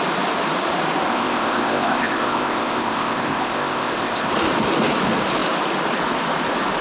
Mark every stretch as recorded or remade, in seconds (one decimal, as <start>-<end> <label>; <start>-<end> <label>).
0.0-1.1 recorded; 1.1-4.3 remade; 4.3-6.8 recorded